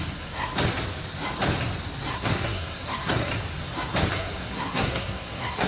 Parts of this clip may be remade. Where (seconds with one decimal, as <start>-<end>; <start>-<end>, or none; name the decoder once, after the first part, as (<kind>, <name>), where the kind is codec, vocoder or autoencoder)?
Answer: 0.0-0.5 (codec, SNAC); 2.1-3.3; 4.1-5.7